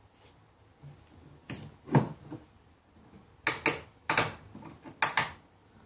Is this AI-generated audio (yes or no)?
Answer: no